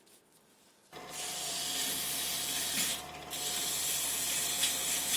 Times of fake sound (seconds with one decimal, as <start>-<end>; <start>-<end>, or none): 3.8-4.4